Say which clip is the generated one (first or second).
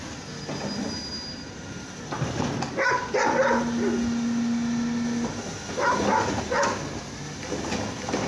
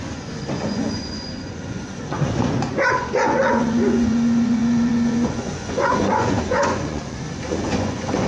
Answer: second